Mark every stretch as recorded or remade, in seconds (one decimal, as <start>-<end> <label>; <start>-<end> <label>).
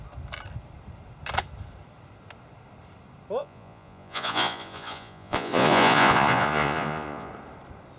0.0-3.4 recorded; 3.4-7.3 remade; 7.3-8.0 recorded